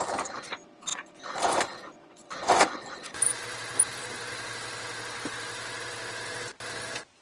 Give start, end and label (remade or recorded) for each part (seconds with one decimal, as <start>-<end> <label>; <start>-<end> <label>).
0.0-0.9 recorded; 0.9-3.4 remade; 3.4-7.2 recorded